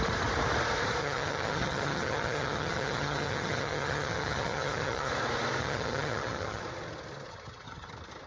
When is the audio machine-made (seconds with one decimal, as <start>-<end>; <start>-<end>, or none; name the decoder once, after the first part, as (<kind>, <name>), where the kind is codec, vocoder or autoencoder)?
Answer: 1.0-5.1 (vocoder, HiFi-GAN); 5.6-6.6; 7.3-7.9